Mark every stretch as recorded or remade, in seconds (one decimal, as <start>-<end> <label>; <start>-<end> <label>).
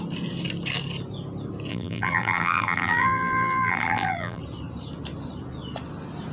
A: 0.0-1.7 recorded; 1.7-4.4 remade; 4.4-6.3 recorded